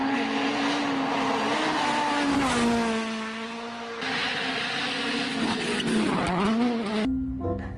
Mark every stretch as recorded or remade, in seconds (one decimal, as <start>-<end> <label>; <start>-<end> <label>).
0.0-7.8 recorded